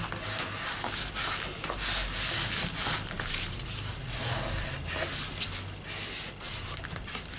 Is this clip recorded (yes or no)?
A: yes